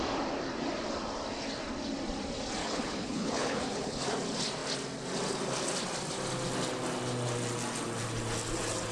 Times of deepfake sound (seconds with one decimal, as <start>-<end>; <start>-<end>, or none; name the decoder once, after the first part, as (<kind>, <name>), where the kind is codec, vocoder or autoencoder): 2.6-4.0 (codec, HILCodec)